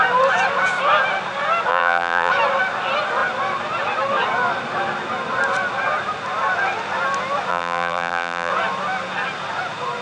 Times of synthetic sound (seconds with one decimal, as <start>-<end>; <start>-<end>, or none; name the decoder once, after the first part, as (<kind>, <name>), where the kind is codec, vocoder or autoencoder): 1.7-2.3 (vocoder, BigVGAN v2); 7.5-8.5